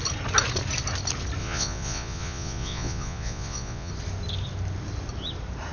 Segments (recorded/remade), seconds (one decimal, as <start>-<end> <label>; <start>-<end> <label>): 0.0-1.4 recorded; 1.4-3.9 remade; 3.9-5.7 recorded